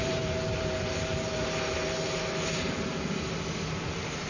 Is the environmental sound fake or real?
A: fake